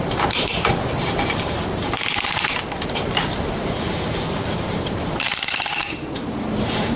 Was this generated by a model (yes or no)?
yes